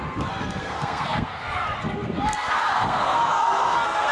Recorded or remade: remade